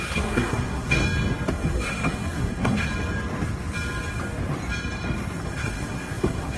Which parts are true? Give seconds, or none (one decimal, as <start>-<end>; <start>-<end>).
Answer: 1.0-1.5; 2.9-5.4